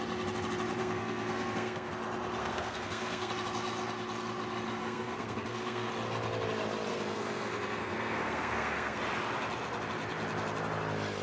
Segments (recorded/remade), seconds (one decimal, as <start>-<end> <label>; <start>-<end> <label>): 0.0-0.8 recorded; 0.8-1.9 remade; 1.9-2.4 recorded; 2.4-3.3 remade; 3.3-4.8 recorded; 4.8-5.9 remade; 5.9-6.9 recorded; 6.9-9.0 remade; 9.0-11.2 recorded